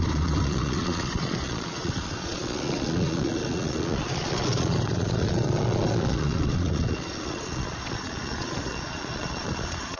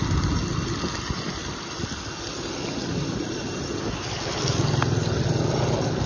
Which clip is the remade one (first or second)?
first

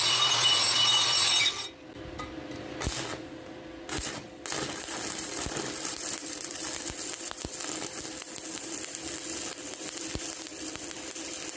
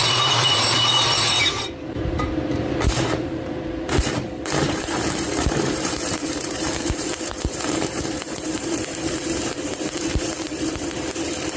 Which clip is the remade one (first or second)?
second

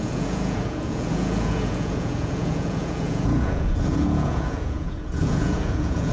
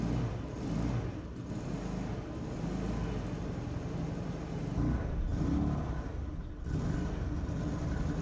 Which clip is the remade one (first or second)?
first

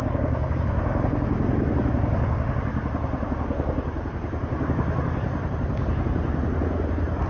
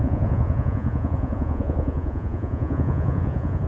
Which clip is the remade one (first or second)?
second